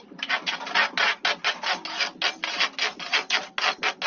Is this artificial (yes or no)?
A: no